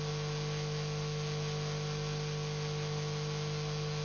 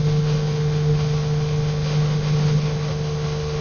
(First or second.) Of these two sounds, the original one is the first